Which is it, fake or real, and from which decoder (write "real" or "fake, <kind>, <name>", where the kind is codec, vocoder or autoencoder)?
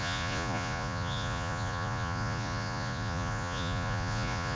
fake, vocoder, Vocos